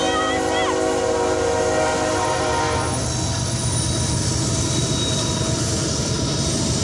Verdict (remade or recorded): recorded